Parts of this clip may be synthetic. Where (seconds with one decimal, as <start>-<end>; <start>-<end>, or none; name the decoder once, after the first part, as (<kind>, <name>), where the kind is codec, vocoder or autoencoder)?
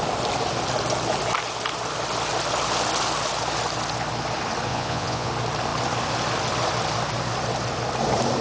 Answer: 4.7-5.3 (vocoder, Vocos)